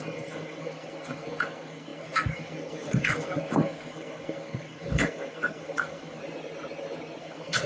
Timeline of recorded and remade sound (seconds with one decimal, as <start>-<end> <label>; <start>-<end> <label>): 0.0-6.2 remade; 6.2-7.2 recorded; 7.2-7.7 remade